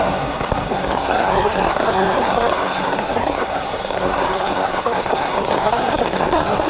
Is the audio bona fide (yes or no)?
no